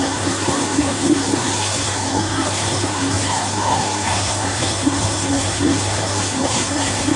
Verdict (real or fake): fake